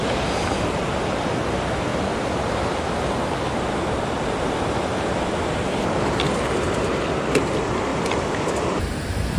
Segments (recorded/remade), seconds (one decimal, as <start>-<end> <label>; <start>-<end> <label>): 0.0-9.4 recorded